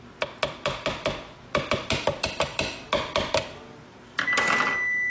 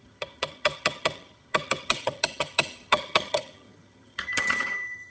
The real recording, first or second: first